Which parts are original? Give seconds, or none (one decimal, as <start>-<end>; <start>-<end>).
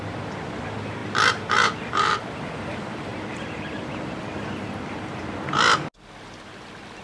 0.0-7.0